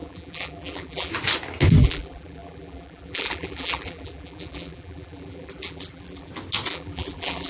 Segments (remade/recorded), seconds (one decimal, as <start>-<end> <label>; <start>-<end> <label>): 0.0-1.1 remade; 1.1-1.8 recorded; 1.8-6.3 remade; 6.3-6.7 recorded; 6.7-7.5 remade